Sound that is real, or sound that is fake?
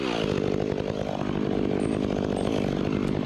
real